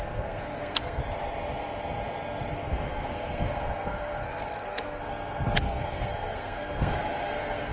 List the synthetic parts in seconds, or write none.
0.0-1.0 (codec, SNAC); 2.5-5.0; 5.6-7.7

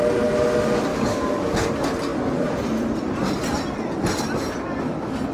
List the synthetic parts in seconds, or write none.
0.9-1.7 (codec, DAC)

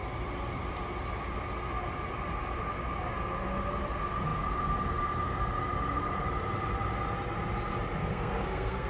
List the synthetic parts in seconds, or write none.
8.0-8.9 (codec, SNAC)

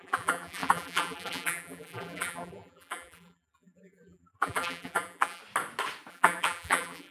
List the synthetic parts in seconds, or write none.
0.0-5.4 (vocoder, BigVGAN v2); 6.1-7.1

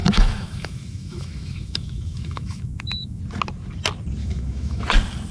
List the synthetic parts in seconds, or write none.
0.0-3.2 (autoencoder, DAC-VAE); 4.2-4.8